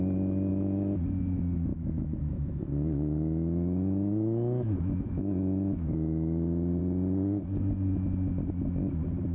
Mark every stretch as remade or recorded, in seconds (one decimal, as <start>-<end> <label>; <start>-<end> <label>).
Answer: 0.0-0.5 recorded; 0.5-1.0 remade; 1.0-1.7 recorded; 1.7-6.8 remade; 6.8-9.3 recorded